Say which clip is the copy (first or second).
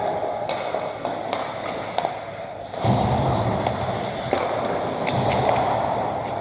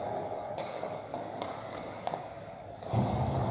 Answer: second